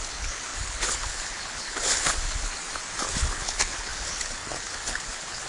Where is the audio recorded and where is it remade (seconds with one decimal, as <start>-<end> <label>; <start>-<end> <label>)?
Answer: 0.0-2.5 remade; 2.5-3.3 recorded; 3.3-5.5 remade